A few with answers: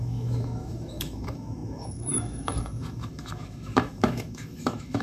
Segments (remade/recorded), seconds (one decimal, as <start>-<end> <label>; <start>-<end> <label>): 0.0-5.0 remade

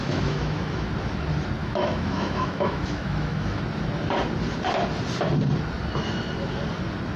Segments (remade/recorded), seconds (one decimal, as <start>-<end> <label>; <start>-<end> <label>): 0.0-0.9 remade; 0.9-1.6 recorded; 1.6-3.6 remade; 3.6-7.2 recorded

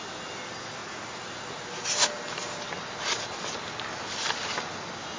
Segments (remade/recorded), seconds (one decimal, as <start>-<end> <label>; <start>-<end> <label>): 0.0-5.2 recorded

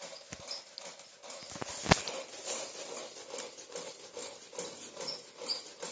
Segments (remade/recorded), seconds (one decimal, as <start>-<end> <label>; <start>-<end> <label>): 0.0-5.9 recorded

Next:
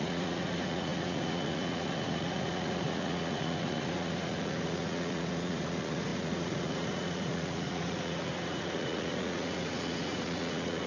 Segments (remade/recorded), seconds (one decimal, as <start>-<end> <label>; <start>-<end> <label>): 0.0-10.9 remade

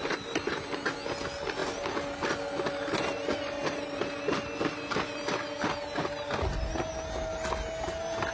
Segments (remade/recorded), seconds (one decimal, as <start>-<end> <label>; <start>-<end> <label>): 0.0-8.3 recorded

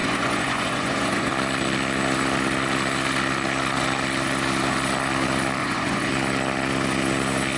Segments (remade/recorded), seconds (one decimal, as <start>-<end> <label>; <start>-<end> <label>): 0.0-1.3 remade; 1.3-5.6 recorded; 5.6-6.1 remade; 6.1-7.6 recorded

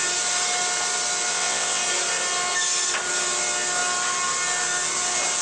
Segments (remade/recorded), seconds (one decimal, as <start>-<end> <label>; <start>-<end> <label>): 0.0-1.3 recorded; 1.3-1.8 remade; 1.8-5.4 recorded